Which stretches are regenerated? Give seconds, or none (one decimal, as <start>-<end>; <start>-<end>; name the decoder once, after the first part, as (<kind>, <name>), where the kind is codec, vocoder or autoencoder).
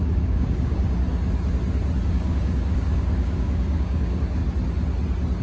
0.0-1.0 (codec, DAC); 2.1-4.4